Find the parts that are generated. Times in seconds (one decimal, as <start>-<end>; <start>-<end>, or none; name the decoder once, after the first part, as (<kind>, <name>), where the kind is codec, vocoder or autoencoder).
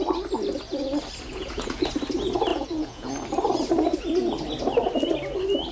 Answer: 1.3-1.9 (vocoder, Vocos); 2.5-3.1